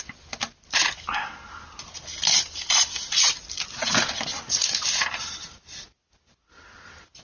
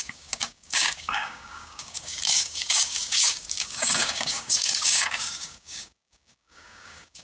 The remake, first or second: second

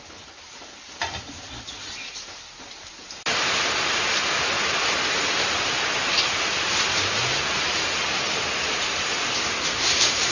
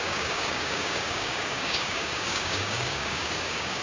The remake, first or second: second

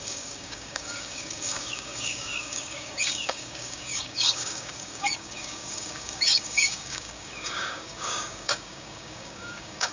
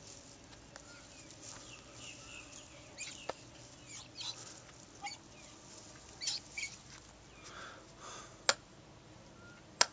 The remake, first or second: first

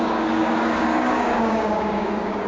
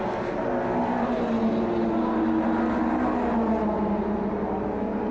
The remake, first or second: first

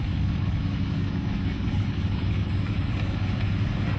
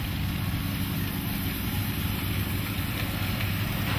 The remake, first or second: first